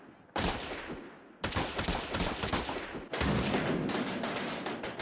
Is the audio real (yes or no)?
yes